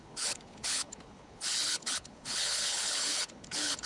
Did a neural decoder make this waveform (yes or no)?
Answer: yes